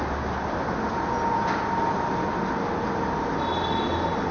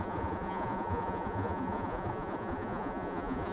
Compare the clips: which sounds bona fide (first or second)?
first